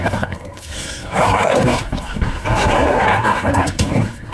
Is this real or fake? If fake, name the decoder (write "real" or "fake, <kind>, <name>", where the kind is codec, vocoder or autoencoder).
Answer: fake, codec, SNAC